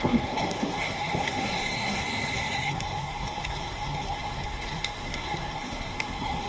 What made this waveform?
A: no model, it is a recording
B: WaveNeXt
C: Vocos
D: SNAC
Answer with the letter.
D